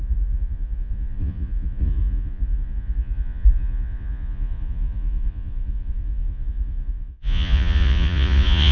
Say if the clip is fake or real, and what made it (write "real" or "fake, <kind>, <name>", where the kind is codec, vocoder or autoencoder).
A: fake, vocoder, Vocos